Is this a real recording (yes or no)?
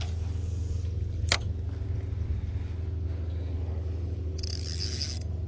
yes